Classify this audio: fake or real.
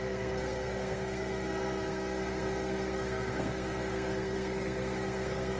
fake